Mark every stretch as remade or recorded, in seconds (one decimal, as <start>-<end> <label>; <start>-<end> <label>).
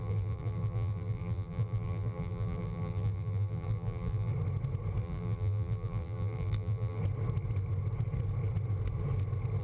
0.0-4.3 remade; 4.3-5.0 recorded; 5.0-7.0 remade; 7.0-9.6 recorded